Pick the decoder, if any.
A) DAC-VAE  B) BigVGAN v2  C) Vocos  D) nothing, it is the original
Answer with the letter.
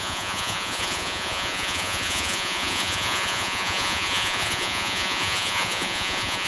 C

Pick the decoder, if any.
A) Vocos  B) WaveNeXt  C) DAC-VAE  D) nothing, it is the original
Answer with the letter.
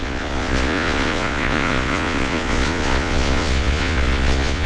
A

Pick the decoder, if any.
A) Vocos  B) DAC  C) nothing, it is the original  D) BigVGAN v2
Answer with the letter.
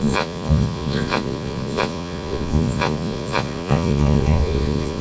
A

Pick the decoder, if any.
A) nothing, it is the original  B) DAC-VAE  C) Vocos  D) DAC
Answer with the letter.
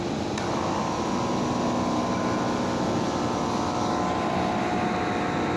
A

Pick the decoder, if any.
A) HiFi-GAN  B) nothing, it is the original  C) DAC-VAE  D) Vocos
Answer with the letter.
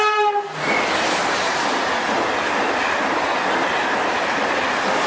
B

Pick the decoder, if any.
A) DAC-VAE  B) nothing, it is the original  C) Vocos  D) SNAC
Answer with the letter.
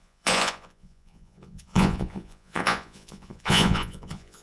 C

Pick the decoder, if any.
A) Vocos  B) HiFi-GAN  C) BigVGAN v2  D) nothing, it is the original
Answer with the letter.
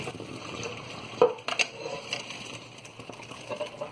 D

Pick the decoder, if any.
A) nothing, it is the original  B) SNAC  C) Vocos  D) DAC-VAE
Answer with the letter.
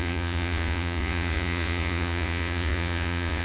C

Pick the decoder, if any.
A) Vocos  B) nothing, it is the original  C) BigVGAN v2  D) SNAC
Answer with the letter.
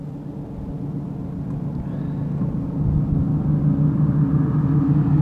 B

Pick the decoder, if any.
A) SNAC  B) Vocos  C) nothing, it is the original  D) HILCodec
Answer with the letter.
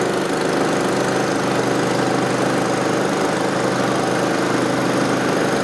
C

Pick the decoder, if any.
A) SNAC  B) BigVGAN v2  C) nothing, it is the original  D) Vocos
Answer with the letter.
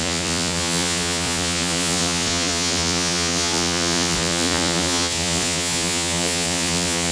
D